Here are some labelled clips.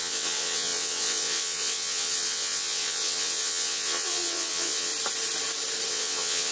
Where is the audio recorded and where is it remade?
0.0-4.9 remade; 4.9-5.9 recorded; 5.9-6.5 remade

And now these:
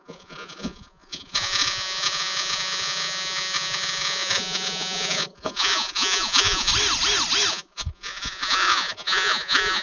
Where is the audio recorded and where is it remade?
0.0-6.7 remade; 6.7-7.5 recorded; 7.5-9.8 remade

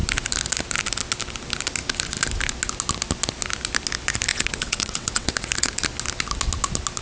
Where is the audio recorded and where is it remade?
0.0-4.3 recorded; 4.3-5.7 remade; 5.7-7.0 recorded

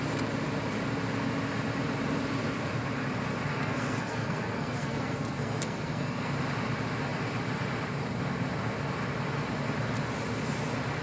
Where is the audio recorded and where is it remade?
0.0-3.5 recorded; 3.5-6.3 remade; 6.3-11.0 recorded

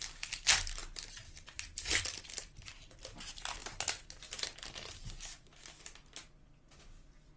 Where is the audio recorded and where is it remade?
0.0-7.4 recorded

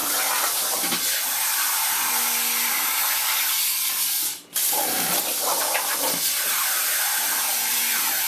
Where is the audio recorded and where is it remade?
0.0-7.5 recorded; 7.5-8.3 remade